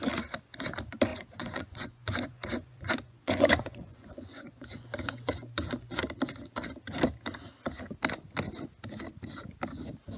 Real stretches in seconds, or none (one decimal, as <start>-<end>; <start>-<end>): 0.0-1.1; 6.0-10.2